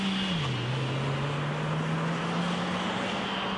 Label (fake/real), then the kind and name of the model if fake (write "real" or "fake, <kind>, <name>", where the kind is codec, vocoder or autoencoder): real